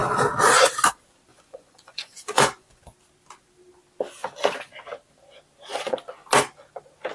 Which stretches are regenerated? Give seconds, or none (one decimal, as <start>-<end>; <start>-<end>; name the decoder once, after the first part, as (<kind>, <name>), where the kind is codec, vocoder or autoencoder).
1.3-2.8 (vocoder, Vocos)